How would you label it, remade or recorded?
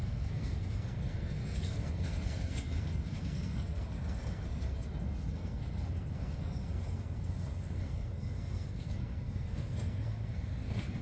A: remade